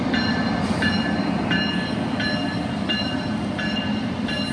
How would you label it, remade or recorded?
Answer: recorded